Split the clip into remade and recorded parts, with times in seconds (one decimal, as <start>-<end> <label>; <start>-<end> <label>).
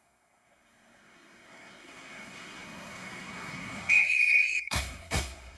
0.0-5.6 remade